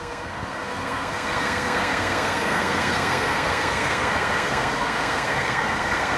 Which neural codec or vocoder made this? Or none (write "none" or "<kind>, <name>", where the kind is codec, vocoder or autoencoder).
codec, SNAC